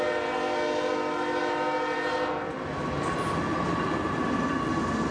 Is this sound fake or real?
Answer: real